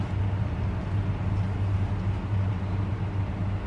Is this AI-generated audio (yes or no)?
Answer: no